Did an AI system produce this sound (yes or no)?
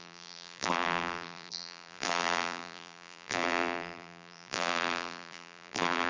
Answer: yes